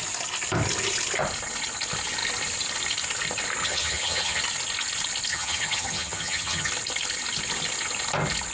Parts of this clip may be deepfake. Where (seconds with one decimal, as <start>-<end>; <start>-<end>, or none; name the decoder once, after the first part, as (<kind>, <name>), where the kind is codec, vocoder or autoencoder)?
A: 3.6-4.4 (vocoder, HiFi-GAN); 5.3-6.7